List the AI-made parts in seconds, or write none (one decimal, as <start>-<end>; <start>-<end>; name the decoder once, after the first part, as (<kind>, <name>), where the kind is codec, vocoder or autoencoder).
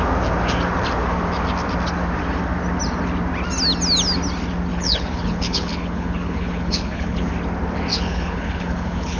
4.7-7.3 (codec, HILCodec); 7.9-9.2